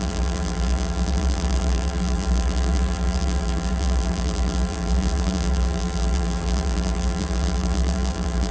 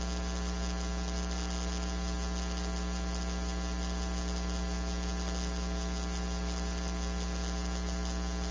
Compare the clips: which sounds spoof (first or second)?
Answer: first